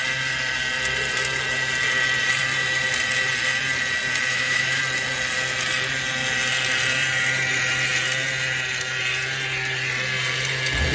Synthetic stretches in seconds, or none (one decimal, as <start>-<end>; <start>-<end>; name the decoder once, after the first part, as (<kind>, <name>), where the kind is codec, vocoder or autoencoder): 4.3-4.8 (autoencoder, DAC-VAE)